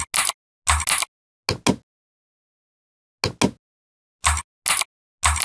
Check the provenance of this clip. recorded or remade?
recorded